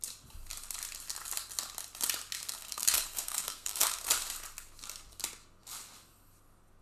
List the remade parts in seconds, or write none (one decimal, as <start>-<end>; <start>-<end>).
2.6-4.0